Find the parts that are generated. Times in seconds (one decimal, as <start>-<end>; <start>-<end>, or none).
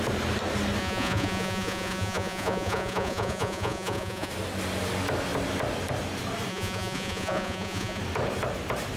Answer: 0.8-4.3; 6.5-8.0